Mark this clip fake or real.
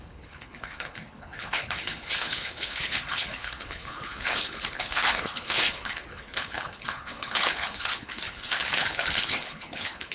fake